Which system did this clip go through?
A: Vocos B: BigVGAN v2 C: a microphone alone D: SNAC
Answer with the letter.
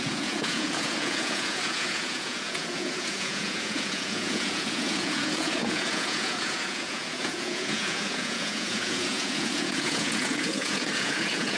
A